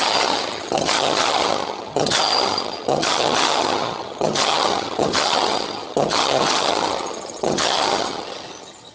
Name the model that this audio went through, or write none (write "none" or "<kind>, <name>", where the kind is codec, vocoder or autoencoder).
vocoder, HiFi-GAN